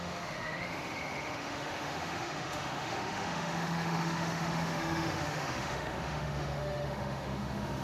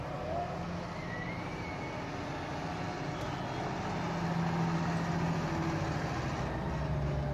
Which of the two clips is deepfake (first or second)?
first